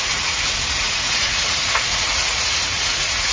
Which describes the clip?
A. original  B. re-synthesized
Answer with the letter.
B